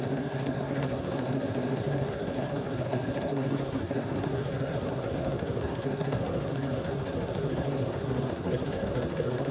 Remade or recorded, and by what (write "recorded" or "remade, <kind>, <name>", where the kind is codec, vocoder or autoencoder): remade, codec, SNAC